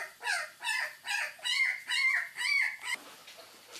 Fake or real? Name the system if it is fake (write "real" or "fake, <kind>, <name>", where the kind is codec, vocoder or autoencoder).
real